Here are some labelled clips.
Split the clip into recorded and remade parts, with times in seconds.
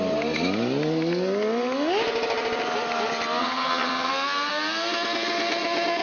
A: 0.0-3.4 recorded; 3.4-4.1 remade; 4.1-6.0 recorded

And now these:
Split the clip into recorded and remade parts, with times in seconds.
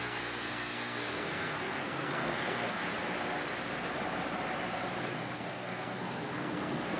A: 0.0-2.8 remade; 2.8-5.0 recorded; 5.0-7.0 remade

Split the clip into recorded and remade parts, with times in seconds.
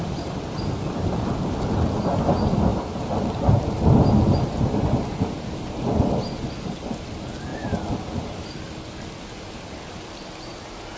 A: 0.0-11.0 recorded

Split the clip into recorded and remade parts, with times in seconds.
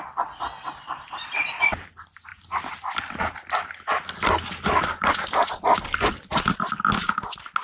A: 0.0-7.6 recorded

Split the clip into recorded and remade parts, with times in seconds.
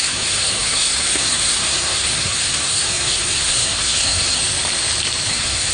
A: 0.0-4.4 remade; 4.4-5.3 recorded; 5.3-5.7 remade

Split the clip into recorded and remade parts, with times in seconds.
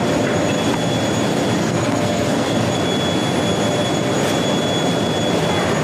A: 0.0-1.6 recorded; 1.6-2.7 remade; 2.7-5.8 recorded